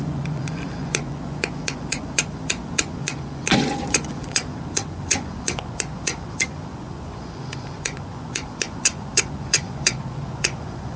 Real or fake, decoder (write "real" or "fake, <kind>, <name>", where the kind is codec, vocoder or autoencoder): fake, vocoder, Vocos